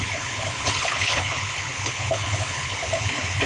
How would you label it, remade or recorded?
remade